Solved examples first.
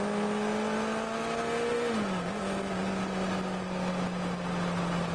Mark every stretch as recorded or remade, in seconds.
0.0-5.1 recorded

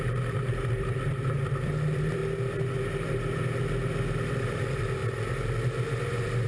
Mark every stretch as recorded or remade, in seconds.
0.0-2.2 remade; 2.2-4.3 recorded; 4.3-5.0 remade; 5.0-6.0 recorded; 6.0-6.5 remade

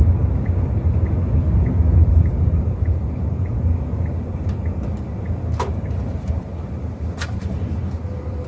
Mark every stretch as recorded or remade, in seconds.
0.0-2.1 recorded; 2.1-3.6 remade; 3.6-6.3 recorded; 6.3-8.5 remade

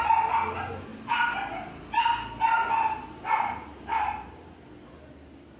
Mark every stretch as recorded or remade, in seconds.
0.0-5.6 recorded

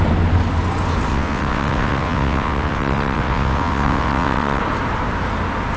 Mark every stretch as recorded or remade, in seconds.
0.0-1.1 recorded; 1.1-4.6 remade; 4.6-5.8 recorded

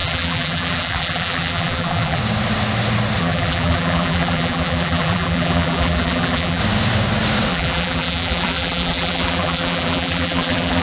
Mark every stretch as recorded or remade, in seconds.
0.0-2.2 remade; 2.2-3.2 recorded; 3.2-6.6 remade; 6.6-7.5 recorded; 7.5-10.8 remade